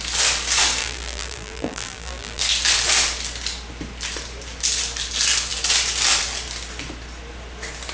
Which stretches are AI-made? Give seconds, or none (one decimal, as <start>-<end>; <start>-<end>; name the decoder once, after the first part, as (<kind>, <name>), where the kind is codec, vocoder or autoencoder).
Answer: 0.8-2.4 (vocoder, BigVGAN v2)

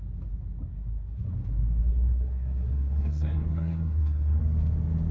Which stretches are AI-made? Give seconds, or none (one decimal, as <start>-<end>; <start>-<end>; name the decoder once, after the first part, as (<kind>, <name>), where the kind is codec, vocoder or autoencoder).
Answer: 0.7-1.3 (codec, SNAC); 1.8-4.4

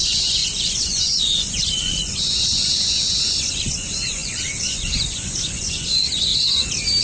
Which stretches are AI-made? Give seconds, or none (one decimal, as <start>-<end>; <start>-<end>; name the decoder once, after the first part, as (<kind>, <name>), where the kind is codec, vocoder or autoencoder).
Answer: 0.0-6.3 (vocoder, Vocos)